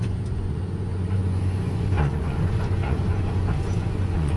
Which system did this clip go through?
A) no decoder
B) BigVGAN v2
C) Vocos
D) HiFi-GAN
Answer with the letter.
C